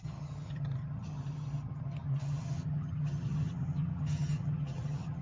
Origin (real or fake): fake